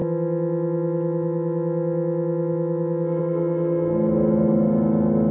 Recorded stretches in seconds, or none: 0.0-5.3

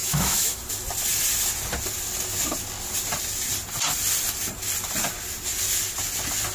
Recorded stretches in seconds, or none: 0.6-6.5

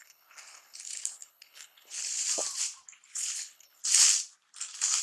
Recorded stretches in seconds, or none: 2.1-3.2; 3.8-5.0

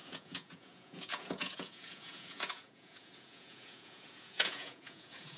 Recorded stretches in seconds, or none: none

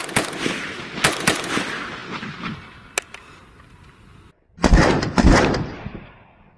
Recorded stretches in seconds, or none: 0.0-6.6

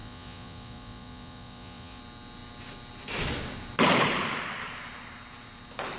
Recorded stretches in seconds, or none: 2.0-6.0

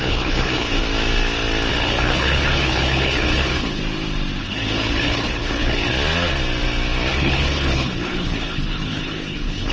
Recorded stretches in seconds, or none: 0.8-1.7; 3.8-4.4; 5.9-7.1

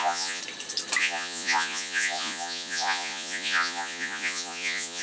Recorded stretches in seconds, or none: 0.4-1.0